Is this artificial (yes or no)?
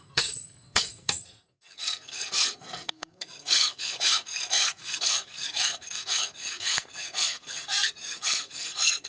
yes